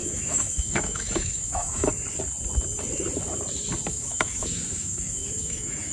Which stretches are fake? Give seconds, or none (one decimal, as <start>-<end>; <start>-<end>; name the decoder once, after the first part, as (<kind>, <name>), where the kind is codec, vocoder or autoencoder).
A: 0.0-1.9 (autoencoder, DAC-VAE); 3.9-5.9